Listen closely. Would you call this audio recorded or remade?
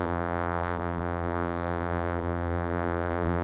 remade